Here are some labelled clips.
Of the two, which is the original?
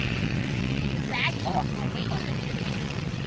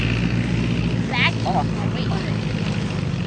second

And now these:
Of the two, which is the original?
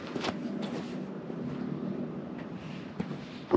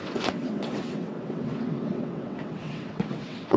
first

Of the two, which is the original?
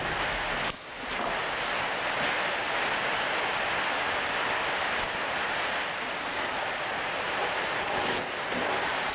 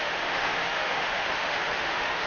first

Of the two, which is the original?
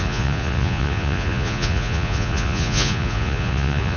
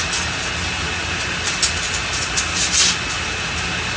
second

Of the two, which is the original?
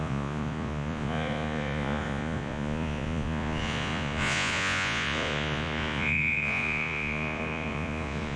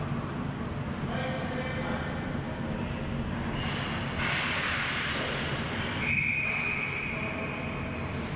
second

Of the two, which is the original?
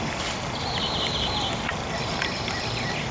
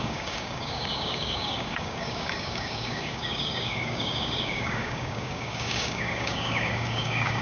first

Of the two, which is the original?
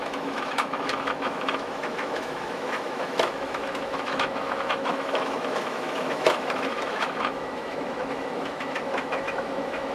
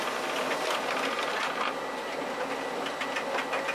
second